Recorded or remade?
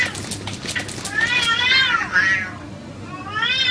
recorded